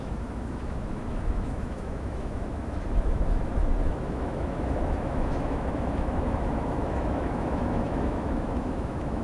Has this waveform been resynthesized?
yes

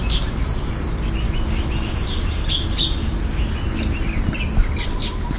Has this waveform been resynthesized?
no